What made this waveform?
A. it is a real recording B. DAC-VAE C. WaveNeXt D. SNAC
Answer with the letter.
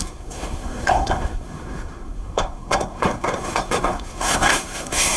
D